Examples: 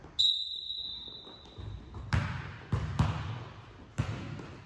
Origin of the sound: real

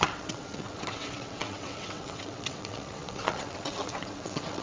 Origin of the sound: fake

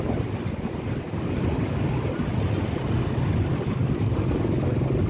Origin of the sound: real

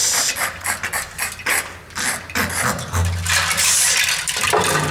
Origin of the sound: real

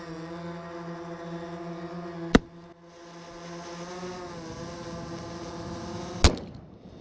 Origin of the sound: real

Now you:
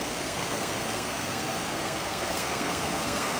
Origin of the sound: fake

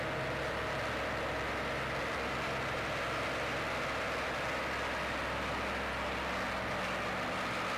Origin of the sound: real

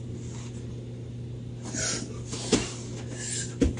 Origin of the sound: real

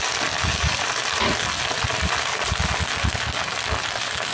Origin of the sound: real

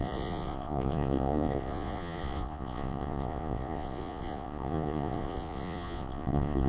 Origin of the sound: fake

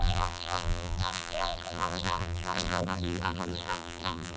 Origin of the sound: fake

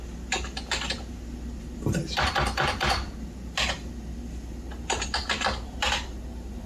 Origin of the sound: real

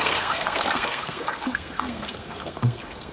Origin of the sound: fake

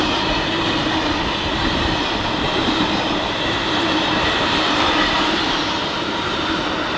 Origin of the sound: fake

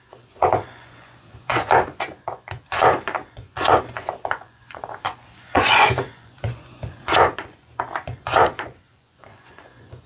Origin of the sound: fake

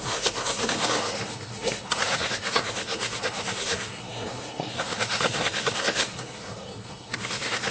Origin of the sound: fake